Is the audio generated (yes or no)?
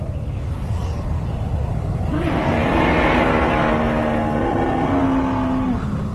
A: no